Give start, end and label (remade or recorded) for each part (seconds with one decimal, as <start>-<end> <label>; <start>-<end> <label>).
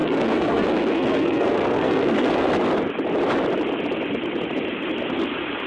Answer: 0.0-2.5 remade; 2.5-5.7 recorded